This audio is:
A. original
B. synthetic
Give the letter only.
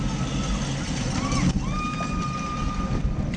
A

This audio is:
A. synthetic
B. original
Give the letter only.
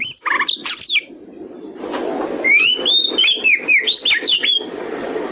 A